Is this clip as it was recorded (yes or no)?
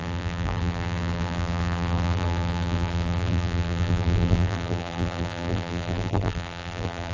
no